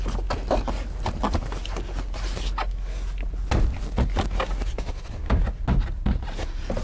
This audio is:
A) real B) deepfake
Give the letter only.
A